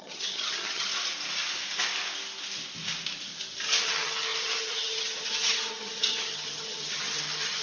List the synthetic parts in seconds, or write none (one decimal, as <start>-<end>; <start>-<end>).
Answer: 0.0-0.9; 3.8-7.6